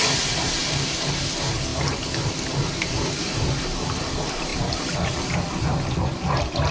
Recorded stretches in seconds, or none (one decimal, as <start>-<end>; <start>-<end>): 0.0-6.7